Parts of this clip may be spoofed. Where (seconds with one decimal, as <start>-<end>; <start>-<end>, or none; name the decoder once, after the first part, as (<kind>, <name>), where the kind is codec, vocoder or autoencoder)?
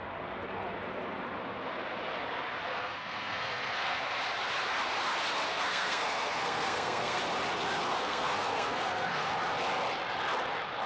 2.7-4.0 (codec, SNAC); 5.5-7.2; 7.9-9.3